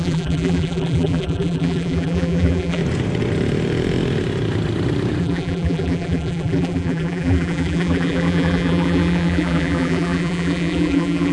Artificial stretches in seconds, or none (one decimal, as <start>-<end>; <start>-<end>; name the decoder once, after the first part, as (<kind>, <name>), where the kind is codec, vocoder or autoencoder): 0.0-2.8 (vocoder, BigVGAN v2); 5.2-11.3